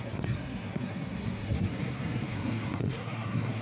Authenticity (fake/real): fake